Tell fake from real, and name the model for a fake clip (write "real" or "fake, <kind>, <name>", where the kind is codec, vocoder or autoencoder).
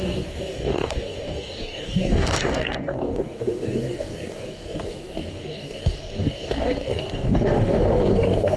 fake, codec, DAC